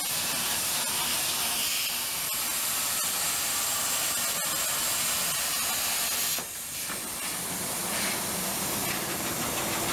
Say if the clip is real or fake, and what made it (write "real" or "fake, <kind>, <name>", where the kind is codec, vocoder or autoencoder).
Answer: real